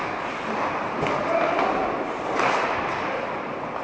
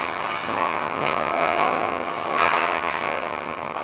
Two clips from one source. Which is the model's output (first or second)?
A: second